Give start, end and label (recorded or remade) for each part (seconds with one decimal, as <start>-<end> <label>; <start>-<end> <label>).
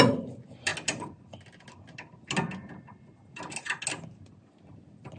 0.0-5.2 recorded